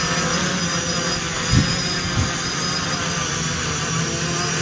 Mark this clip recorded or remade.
recorded